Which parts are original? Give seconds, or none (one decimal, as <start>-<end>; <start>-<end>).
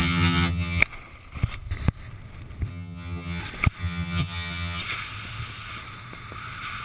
0.8-2.7; 3.4-3.8; 4.8-6.8